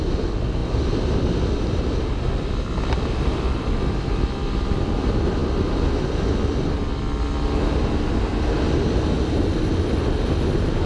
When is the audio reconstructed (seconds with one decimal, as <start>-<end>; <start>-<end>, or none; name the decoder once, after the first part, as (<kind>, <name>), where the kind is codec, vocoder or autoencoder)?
none